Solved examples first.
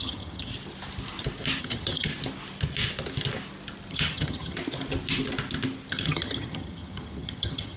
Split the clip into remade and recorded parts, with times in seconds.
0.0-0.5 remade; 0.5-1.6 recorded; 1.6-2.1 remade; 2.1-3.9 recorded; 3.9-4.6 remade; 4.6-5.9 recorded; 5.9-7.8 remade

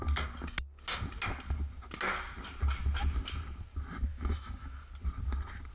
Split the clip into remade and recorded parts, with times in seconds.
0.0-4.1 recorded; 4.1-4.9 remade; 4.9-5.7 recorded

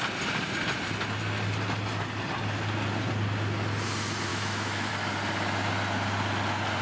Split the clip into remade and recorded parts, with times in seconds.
0.0-4.3 recorded; 4.3-4.9 remade; 4.9-6.8 recorded